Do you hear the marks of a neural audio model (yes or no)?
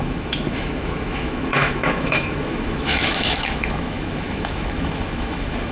yes